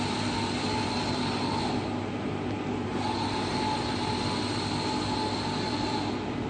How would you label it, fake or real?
real